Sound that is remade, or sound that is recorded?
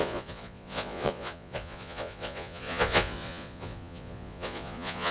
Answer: remade